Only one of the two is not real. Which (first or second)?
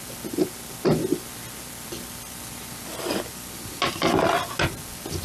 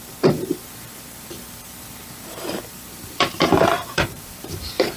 second